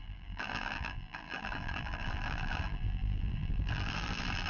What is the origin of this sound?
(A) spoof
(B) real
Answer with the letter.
A